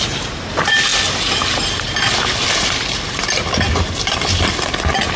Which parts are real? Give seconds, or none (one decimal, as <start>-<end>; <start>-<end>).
0.0-5.2